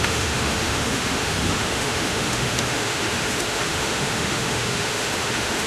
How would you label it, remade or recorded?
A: remade